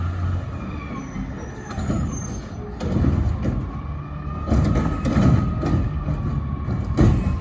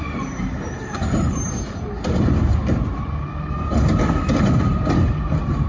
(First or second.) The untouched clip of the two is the first